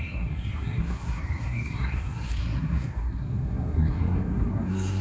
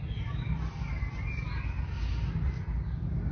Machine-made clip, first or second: first